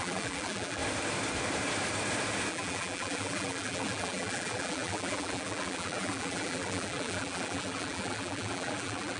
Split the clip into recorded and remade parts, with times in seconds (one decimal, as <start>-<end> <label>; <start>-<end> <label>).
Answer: 0.0-0.8 remade; 0.8-2.5 recorded; 2.5-9.2 remade

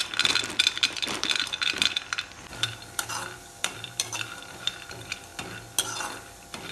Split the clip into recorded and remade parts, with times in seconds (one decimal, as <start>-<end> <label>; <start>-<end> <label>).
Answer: 0.0-1.4 recorded; 1.4-5.3 remade; 5.3-6.0 recorded; 6.0-6.7 remade

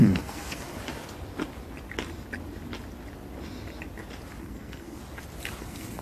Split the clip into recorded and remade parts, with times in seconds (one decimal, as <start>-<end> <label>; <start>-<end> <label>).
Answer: 0.0-0.8 remade; 0.8-4.4 recorded; 4.4-5.0 remade; 5.0-5.6 recorded; 5.6-6.0 remade

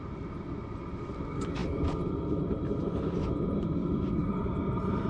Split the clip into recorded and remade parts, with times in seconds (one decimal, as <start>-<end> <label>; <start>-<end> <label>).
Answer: 0.0-5.1 recorded

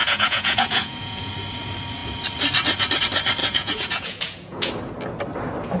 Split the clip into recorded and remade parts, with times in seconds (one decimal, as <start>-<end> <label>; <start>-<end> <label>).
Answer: 0.0-1.3 remade; 1.3-3.4 recorded; 3.4-4.7 remade; 4.7-5.8 recorded

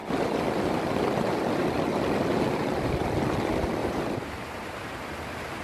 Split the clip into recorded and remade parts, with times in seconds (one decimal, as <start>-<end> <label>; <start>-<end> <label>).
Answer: 0.0-3.8 recorded; 3.8-5.0 remade; 5.0-5.6 recorded